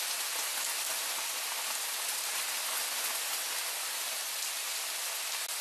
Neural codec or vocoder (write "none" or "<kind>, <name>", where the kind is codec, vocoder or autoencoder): none